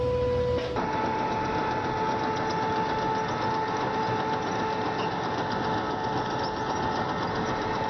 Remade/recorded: recorded